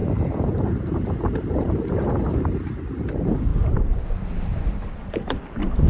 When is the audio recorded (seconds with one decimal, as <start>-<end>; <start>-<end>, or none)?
3.5-5.4